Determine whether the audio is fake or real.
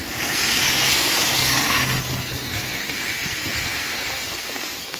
fake